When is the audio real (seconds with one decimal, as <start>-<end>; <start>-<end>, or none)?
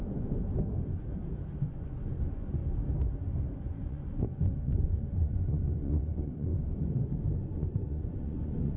0.5-1.6; 2.6-3.8; 6.5-7.3